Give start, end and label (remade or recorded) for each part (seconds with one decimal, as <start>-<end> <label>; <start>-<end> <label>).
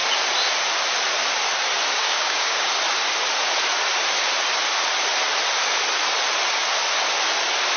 0.0-2.0 recorded; 2.0-2.7 remade; 2.7-7.8 recorded